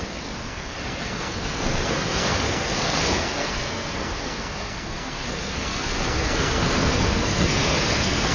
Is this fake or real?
fake